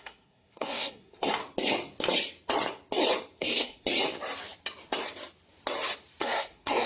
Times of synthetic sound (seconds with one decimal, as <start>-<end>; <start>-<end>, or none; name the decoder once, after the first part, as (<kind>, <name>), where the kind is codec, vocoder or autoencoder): 0.0-1.4 (codec, SNAC); 3.4-3.8; 6.2-6.9

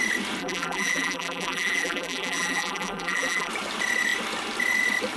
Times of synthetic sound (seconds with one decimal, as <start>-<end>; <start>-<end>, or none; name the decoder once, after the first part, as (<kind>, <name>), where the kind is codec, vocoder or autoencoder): 0.4-3.5 (vocoder, BigVGAN v2)

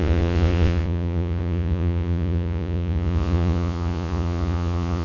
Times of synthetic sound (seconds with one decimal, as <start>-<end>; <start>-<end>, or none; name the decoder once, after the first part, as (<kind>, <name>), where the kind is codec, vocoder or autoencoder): 0.0-5.0 (vocoder, Vocos)

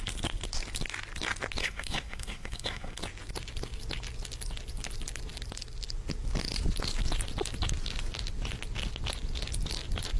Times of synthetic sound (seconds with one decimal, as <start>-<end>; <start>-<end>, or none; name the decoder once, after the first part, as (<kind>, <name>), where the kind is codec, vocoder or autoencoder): 1.6-3.0 (codec, SNAC)

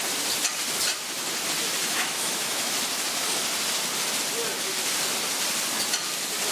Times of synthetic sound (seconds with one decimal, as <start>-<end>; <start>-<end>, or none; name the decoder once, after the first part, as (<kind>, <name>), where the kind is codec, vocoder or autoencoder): 1.8-2.7 (autoencoder, DAC-VAE)

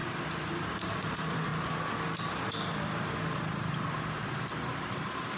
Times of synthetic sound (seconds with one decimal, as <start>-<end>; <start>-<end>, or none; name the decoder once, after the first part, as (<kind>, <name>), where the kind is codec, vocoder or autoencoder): 0.0-1.5 (vocoder, BigVGAN v2); 2.3-5.4